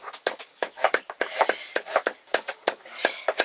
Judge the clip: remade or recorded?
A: remade